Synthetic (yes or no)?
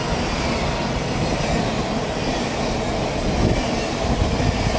no